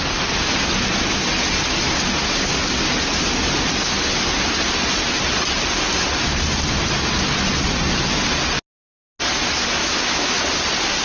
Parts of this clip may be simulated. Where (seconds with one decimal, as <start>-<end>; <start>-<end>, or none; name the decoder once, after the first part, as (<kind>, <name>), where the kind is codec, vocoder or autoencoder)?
9.8-10.4 (autoencoder, DAC-VAE)